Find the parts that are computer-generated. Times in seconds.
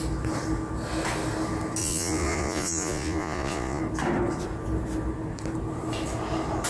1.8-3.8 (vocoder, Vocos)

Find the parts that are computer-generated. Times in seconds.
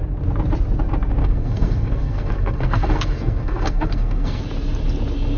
1.2-4.4 (codec, SNAC)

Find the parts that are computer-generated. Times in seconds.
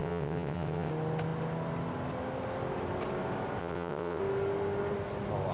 0.0-0.9 (vocoder, WaveNeXt); 3.6-4.2